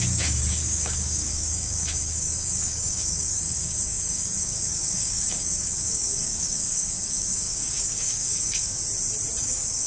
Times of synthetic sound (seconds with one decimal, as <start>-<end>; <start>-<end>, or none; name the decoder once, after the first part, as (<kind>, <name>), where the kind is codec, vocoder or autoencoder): 0.0-8.8 (codec, DAC); 9.4-9.9